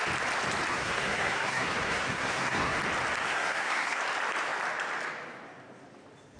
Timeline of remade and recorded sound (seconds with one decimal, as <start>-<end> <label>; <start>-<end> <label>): 0.0-0.7 recorded; 0.7-2.8 remade; 2.8-3.2 recorded; 3.2-4.0 remade; 4.0-6.4 recorded